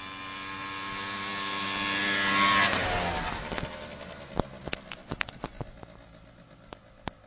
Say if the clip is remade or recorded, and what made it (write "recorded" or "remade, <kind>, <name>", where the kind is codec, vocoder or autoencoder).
recorded